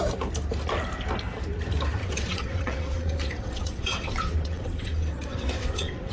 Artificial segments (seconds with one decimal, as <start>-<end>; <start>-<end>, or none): 2.0-6.1